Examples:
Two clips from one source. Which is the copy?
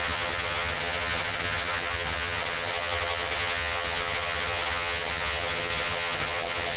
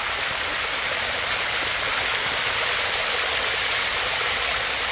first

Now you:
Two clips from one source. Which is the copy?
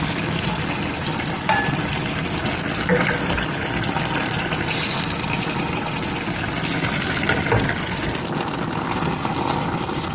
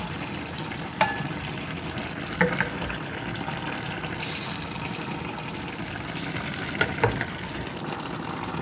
second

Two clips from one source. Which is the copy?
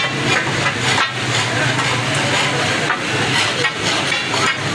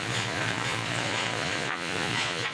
second